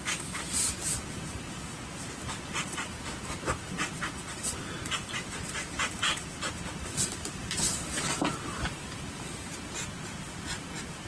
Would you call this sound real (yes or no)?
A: yes